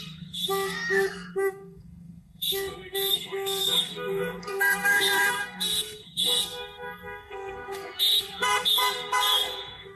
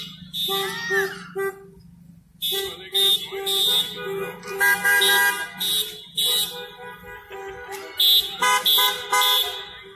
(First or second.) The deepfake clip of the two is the first